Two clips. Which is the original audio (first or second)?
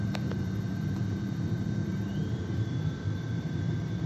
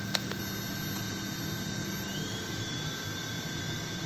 second